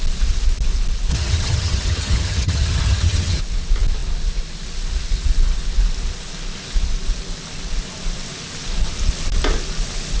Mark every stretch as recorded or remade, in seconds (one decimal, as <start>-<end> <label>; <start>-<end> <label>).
0.0-1.1 recorded; 1.1-3.4 remade; 3.4-10.2 recorded